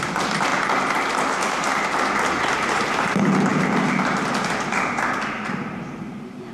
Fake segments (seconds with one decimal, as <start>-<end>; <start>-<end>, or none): 0.0-0.5; 1.1-1.7; 2.4-6.5